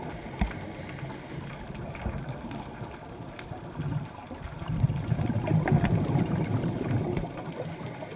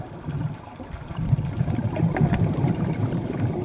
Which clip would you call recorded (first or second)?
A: first